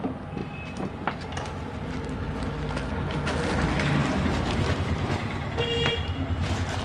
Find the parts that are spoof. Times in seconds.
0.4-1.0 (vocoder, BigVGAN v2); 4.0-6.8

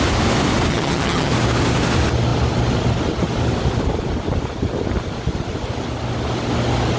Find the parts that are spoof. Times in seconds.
0.7-1.3 (vocoder, HiFi-GAN)

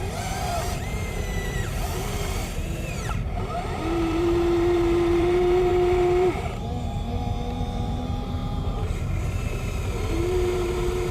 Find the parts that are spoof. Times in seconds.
0.0-11.1 (vocoder, BigVGAN v2)